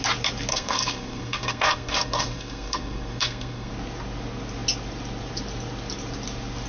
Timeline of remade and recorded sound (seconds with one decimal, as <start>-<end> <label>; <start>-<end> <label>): 0.0-0.5 recorded; 0.5-3.7 remade; 3.7-6.7 recorded